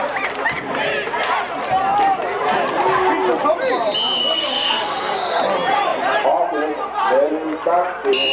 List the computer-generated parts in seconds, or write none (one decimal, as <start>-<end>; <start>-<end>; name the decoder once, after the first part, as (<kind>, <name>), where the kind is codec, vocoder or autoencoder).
4.2-5.4 (codec, SNAC)